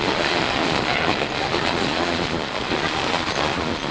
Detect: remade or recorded remade